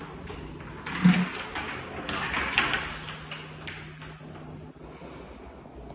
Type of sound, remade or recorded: recorded